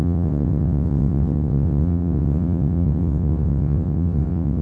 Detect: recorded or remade remade